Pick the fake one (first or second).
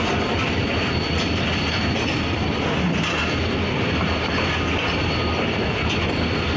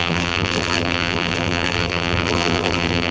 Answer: second